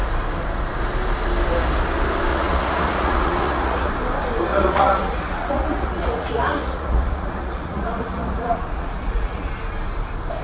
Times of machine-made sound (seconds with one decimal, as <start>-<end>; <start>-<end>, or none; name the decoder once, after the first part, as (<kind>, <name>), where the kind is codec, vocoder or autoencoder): 2.3-3.9 (vocoder, Vocos); 4.5-9.5